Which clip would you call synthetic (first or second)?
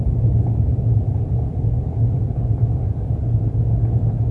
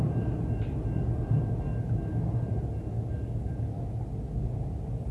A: first